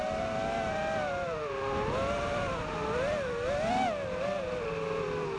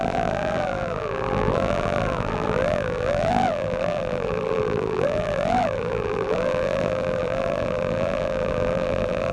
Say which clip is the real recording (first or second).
first